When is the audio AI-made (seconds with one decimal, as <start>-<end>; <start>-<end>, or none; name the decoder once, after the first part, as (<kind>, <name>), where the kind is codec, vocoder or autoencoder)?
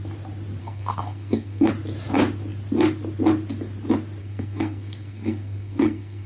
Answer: 0.6-1.7 (codec, SNAC); 4.2-6.3